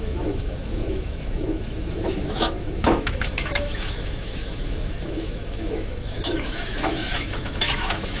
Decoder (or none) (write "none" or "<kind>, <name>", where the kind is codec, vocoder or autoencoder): autoencoder, DAC-VAE